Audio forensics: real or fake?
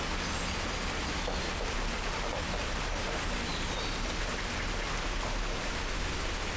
real